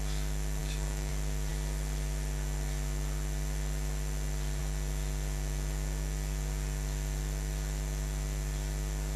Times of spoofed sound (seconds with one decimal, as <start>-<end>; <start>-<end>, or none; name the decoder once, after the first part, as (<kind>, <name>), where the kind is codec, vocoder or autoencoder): 0.6-1.1 (codec, DAC)